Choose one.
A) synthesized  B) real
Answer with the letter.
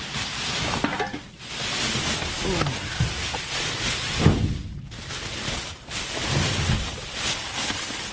B